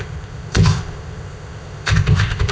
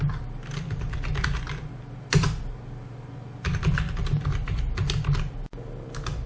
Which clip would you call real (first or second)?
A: second